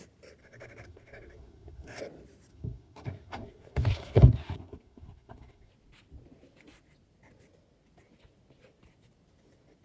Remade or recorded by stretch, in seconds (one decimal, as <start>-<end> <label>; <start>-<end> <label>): 0.0-0.4 recorded; 0.4-2.0 remade; 2.0-2.5 recorded; 2.5-5.7 remade; 5.7-9.8 recorded